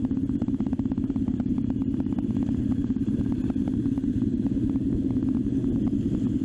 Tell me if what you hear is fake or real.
real